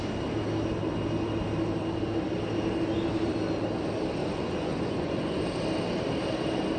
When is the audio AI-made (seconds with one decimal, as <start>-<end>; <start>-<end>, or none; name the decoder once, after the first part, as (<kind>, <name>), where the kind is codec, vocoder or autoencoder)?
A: 4.2-5.4 (vocoder, Vocos)